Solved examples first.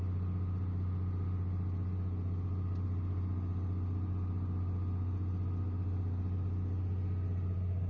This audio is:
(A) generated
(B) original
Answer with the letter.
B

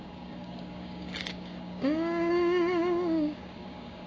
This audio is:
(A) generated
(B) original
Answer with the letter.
A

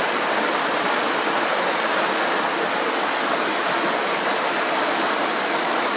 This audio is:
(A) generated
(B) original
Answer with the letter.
B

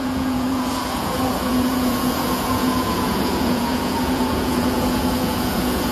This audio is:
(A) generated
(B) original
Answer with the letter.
A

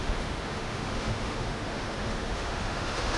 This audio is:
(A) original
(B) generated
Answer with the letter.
B